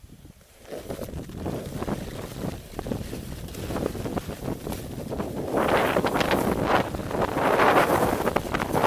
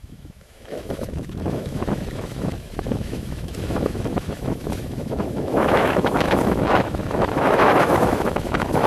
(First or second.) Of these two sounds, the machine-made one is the second